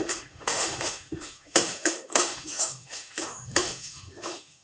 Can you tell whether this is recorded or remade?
remade